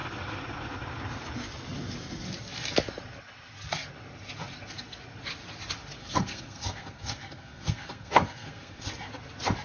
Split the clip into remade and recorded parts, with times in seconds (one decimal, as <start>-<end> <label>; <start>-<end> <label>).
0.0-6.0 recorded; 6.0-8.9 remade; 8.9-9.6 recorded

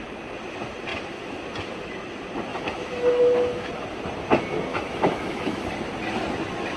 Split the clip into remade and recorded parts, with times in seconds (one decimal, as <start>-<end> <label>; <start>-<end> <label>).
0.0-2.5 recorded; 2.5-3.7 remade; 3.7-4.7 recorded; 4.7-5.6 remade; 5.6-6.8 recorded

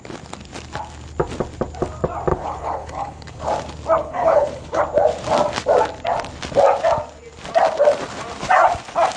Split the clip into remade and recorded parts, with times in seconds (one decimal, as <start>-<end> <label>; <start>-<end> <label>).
0.0-2.3 recorded; 2.3-3.5 remade; 3.5-4.0 recorded; 4.0-4.8 remade; 4.8-9.2 recorded